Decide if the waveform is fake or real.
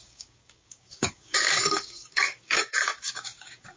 fake